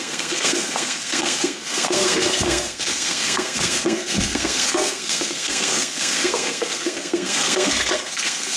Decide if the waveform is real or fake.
fake